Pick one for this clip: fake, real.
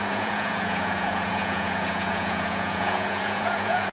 fake